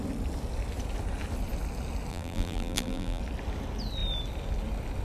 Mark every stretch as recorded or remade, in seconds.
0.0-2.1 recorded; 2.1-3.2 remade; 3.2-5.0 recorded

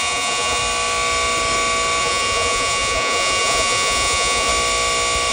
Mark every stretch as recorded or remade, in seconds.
0.0-0.6 remade; 0.6-2.0 recorded; 2.0-4.5 remade; 4.5-5.3 recorded

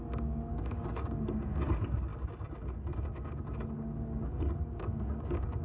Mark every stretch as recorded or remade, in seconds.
0.0-0.5 recorded; 0.5-1.7 remade; 1.7-2.1 recorded; 2.1-5.6 remade

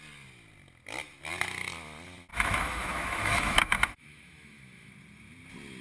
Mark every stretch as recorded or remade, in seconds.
0.0-2.3 recorded; 2.3-4.9 remade; 4.9-5.8 recorded

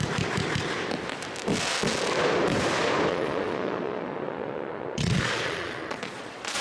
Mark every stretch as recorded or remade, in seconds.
0.0-3.1 recorded; 3.1-6.6 remade